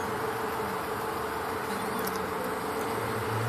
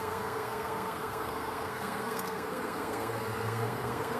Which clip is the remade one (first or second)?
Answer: second